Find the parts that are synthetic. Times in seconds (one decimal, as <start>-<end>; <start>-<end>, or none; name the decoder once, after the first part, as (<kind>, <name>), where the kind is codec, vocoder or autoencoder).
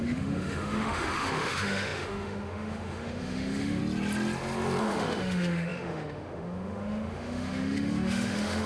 0.0-3.8 (autoencoder, DAC-VAE); 4.8-8.7